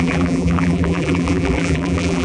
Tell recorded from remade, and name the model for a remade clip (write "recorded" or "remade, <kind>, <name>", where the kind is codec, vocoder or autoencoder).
remade, vocoder, BigVGAN v2